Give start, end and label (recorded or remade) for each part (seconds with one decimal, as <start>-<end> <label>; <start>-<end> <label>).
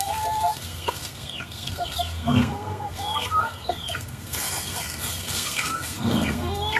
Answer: 0.0-6.8 remade